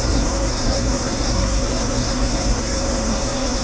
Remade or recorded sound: remade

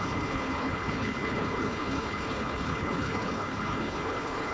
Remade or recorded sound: remade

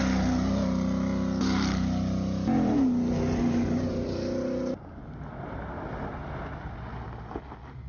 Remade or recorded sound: recorded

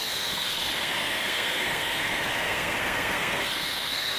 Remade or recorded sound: remade